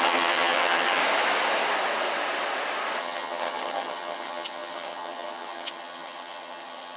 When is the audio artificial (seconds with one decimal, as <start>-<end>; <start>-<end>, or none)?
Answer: 0.0-1.0; 3.0-7.0